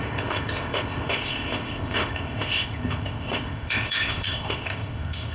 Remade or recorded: remade